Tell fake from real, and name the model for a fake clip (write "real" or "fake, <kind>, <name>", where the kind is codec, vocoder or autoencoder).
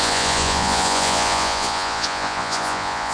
fake, vocoder, Vocos